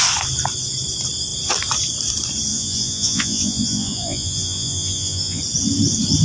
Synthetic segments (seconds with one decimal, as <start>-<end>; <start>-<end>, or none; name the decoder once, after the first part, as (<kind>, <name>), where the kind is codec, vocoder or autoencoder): 2.5-5.4 (vocoder, Vocos)